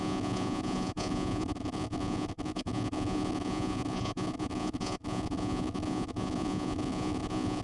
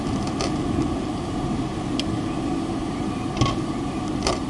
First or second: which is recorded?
second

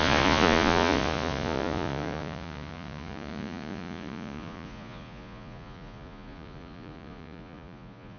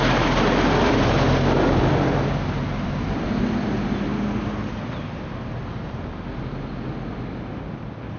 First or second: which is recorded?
second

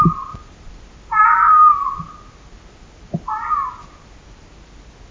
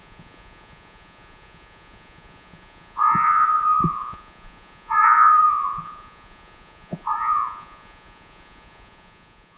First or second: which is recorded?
first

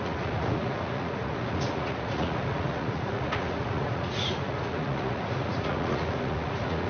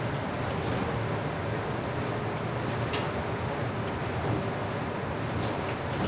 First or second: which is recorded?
second